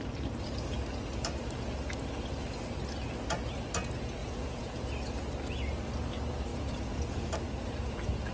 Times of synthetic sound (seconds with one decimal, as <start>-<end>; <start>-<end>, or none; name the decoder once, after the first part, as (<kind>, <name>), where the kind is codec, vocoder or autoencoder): 4.2-4.9 (vocoder, Vocos); 6.5-7.3

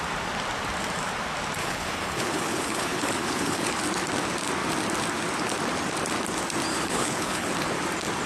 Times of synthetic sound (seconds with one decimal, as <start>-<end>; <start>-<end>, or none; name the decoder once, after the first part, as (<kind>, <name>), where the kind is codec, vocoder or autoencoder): 1.6-3.8 (codec, HILCodec); 6.7-7.5

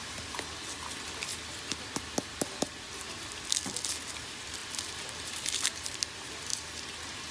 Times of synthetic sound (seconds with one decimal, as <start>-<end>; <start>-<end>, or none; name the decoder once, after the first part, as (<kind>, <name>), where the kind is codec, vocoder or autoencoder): 0.0-1.3 (vocoder, BigVGAN v2); 4.1-4.6; 5.7-6.5

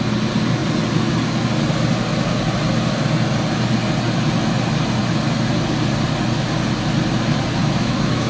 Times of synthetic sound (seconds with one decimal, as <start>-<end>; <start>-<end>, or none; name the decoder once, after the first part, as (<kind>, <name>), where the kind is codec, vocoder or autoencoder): 7.6-8.3 (autoencoder, DAC-VAE)

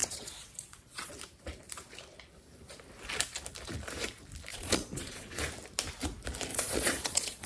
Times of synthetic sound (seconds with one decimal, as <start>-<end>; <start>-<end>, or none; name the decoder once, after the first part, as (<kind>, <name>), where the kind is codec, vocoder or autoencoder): 0.0-1.1 (vocoder, Vocos); 4.5-5.4; 6.5-7.5